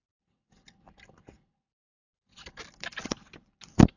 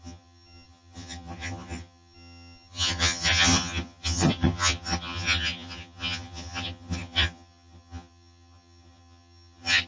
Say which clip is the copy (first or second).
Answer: second